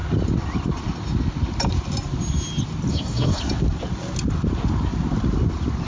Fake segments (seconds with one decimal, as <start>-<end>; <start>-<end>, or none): 2.9-3.4